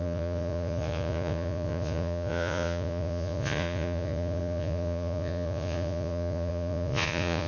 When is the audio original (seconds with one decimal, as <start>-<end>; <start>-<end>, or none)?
none